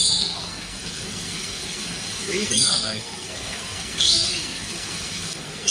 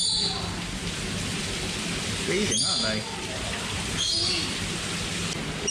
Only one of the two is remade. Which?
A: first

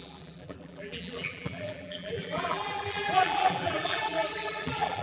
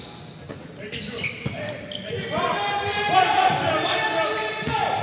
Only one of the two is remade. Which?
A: first